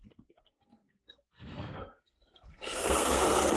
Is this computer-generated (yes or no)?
yes